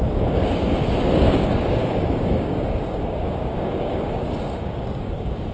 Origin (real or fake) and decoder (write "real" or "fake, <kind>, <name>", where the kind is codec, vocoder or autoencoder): fake, codec, DAC